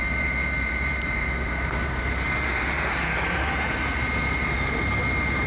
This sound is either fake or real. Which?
fake